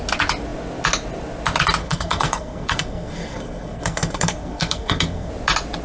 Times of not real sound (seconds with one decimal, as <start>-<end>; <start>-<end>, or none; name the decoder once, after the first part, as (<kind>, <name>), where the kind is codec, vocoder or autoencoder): 1.8-5.3 (codec, SNAC)